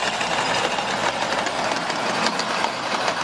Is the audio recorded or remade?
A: recorded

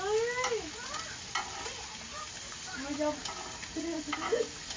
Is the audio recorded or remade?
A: recorded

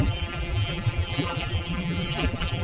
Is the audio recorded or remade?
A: remade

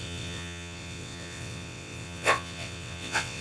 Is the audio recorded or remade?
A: remade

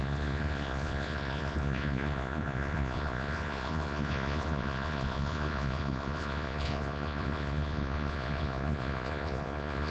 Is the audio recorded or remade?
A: remade